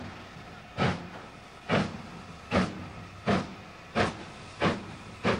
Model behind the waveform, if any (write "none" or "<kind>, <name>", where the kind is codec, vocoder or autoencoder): none